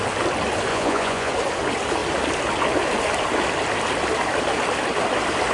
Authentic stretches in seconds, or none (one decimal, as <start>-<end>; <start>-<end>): 0.0-0.7; 1.3-5.5